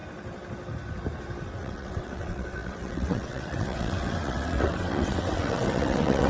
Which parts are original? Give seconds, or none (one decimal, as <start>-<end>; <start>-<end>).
0.0-1.5